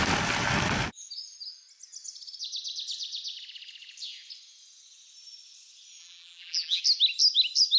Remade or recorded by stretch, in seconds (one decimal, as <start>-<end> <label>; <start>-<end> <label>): 0.0-6.0 recorded; 6.0-6.8 remade; 6.8-7.8 recorded